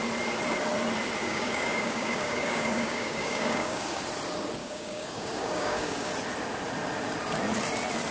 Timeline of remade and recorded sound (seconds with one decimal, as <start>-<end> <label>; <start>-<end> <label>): 0.0-1.2 recorded; 1.2-4.0 remade; 4.0-4.6 recorded; 4.6-6.1 remade; 6.1-8.1 recorded